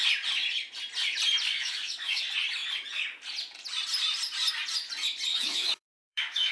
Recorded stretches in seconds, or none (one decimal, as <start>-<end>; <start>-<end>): 0.0-1.6; 2.2-5.3